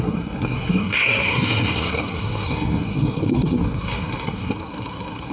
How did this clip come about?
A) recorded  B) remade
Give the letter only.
B